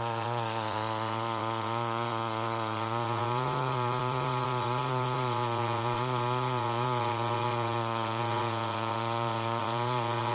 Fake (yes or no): yes